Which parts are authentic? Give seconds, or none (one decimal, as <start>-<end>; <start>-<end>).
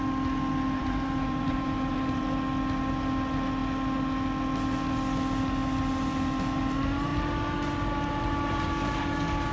0.0-0.8; 2.2-7.1; 9.0-9.5